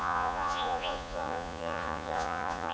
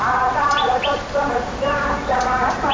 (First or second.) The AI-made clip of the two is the first